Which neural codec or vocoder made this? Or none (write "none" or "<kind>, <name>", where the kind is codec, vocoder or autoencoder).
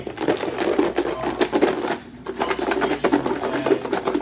none